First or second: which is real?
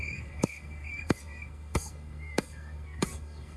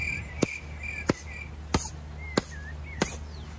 second